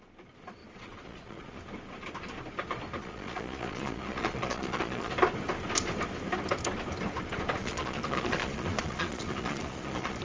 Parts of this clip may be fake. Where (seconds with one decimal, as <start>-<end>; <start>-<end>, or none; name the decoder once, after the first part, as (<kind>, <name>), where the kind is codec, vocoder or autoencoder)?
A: 0.6-1.6 (vocoder, Vocos); 3.0-5.1; 7.6-10.2